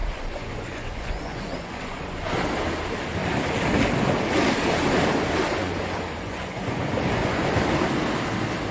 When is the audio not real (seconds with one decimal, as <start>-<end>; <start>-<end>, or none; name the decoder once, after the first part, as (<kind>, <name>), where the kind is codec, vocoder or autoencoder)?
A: 0.0-2.3 (vocoder, Vocos); 5.6-7.5

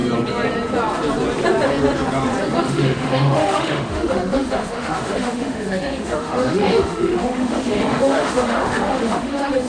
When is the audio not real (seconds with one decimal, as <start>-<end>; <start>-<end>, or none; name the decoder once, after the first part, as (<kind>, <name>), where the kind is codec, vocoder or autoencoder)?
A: 2.6-9.7 (autoencoder, DAC-VAE)